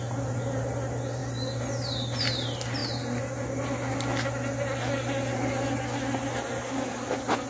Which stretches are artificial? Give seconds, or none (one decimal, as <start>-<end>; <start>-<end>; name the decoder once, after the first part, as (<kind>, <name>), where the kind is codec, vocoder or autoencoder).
none